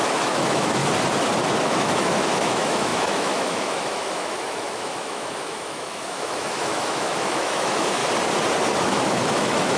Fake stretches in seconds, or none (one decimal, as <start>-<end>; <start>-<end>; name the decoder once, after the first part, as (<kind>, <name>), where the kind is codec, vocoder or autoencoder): 0.0-0.8 (autoencoder, DAC-VAE); 1.6-8.0; 8.8-9.8